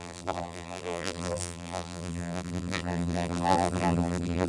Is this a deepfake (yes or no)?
yes